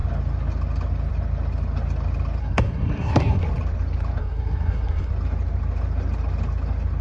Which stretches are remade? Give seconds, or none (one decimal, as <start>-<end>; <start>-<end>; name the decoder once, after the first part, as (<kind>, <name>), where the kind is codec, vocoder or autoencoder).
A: 2.4-3.4 (codec, SNAC); 4.2-5.1